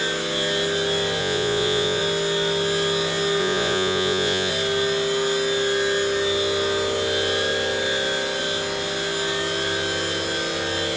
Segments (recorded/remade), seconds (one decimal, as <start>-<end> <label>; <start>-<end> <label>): 0.0-1.2 recorded; 1.2-2.0 remade; 2.0-3.4 recorded; 3.4-4.5 remade; 4.5-11.0 recorded